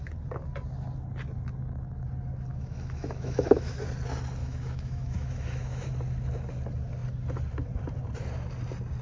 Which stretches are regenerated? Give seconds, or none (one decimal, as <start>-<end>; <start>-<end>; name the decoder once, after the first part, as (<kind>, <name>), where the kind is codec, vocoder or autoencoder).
2.5-3.8 (autoencoder, DAC-VAE); 4.4-5.9